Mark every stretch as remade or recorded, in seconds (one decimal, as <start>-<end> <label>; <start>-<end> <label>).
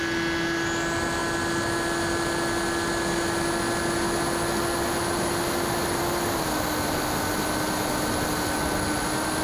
0.0-9.4 recorded